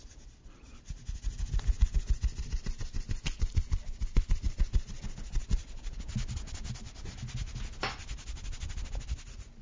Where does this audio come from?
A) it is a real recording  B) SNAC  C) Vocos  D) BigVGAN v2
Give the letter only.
A